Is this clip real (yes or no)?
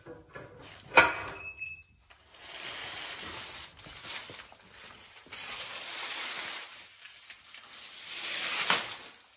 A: yes